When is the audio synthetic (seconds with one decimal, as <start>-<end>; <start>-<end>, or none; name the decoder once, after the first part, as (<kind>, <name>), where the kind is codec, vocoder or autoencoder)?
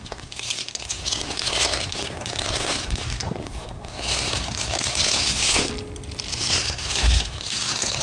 0.0-5.7 (codec, SNAC); 6.3-8.0